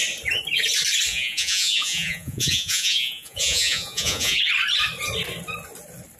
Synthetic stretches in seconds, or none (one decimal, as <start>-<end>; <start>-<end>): 1.1-4.4